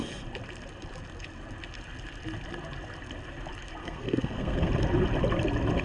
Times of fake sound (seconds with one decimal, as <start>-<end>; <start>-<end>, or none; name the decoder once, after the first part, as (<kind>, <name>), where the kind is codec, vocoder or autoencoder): 3.8-4.7 (codec, SNAC)